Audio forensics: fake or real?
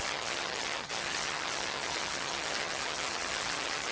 fake